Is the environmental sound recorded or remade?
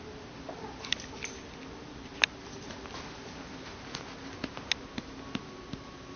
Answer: recorded